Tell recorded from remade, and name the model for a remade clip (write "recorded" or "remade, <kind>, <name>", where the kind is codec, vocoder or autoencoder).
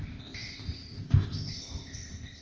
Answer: remade, codec, ZipCodec